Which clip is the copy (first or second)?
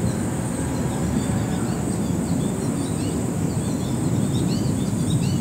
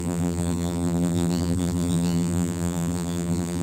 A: second